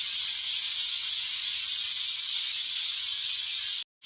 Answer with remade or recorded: recorded